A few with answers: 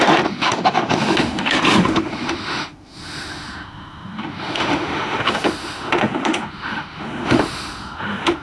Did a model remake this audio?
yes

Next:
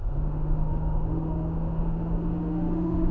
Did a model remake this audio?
yes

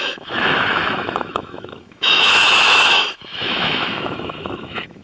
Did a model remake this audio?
yes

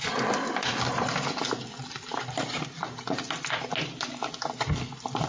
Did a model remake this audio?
no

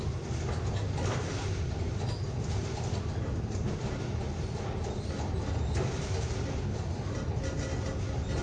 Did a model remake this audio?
no